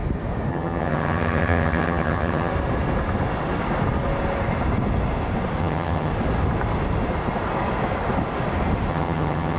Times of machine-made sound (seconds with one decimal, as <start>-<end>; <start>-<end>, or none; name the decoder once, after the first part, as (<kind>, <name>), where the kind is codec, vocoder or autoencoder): 0.5-2.5 (vocoder, HiFi-GAN); 5.6-6.1; 8.9-9.6